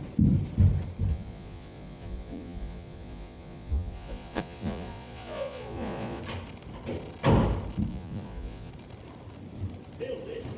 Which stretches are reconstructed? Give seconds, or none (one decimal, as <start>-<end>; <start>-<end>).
1.1-6.2; 7.9-8.7

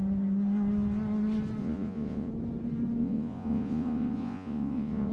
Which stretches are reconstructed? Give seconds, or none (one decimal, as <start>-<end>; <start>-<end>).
1.6-2.3; 3.0-5.1

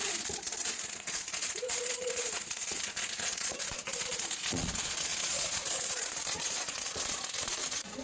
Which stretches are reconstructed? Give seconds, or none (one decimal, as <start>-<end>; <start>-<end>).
0.0-8.0

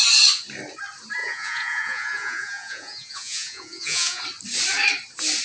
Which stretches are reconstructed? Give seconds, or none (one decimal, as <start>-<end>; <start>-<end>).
1.2-4.2

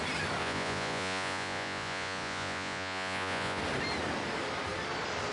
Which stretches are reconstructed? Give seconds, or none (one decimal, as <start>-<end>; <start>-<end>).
0.4-3.6

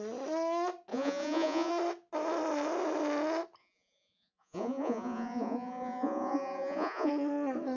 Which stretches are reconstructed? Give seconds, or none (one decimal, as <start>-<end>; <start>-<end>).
0.9-1.7; 3.6-7.1